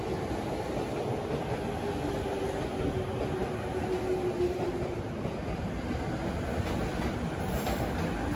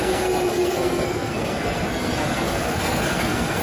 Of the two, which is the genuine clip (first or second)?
first